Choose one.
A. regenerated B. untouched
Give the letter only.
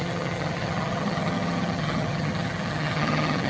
A